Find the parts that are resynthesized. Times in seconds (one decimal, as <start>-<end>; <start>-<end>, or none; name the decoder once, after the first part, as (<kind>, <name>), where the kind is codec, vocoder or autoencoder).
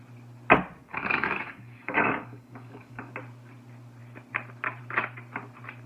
0.9-3.1 (codec, DAC)